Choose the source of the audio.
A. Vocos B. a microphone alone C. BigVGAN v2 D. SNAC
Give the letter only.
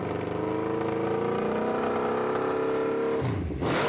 B